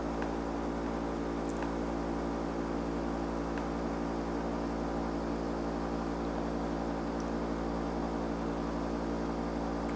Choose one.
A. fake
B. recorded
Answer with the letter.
B